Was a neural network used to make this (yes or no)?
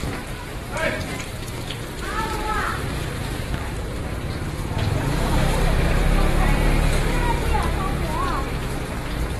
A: yes